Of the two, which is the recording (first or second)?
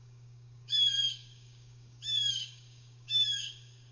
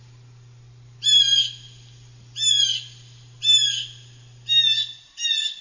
second